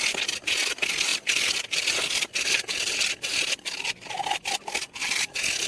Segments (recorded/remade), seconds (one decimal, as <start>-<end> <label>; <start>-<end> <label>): 0.0-1.1 recorded; 1.1-4.5 remade; 4.5-5.0 recorded; 5.0-5.7 remade